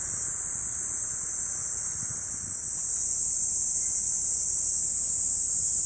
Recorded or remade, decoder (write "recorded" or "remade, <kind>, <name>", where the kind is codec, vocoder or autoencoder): recorded